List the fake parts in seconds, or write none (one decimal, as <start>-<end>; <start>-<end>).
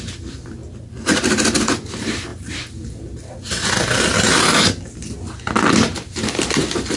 0.0-0.6; 1.7-2.3; 5.7-7.0